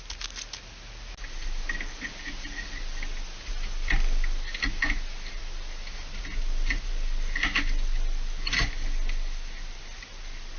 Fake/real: real